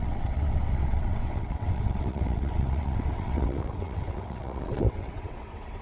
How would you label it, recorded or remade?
remade